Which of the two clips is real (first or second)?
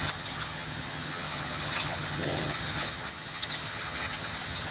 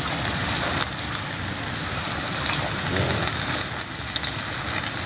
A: second